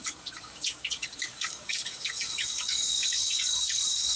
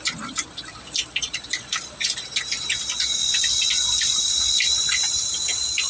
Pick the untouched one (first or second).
second